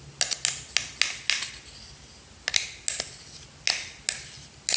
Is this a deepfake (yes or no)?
no